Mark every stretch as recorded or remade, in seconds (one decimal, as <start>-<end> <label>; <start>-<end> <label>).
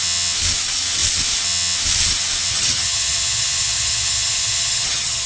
0.0-2.5 recorded; 2.5-5.3 remade